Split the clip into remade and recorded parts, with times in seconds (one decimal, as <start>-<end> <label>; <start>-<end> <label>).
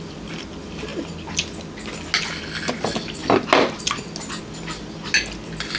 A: 0.0-5.8 recorded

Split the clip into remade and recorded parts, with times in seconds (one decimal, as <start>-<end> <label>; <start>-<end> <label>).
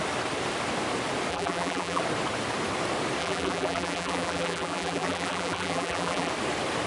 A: 0.0-1.3 recorded; 1.3-2.0 remade; 2.0-3.2 recorded; 3.2-6.3 remade; 6.3-6.9 recorded